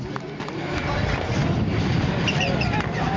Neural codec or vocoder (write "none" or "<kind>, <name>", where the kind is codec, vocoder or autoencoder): none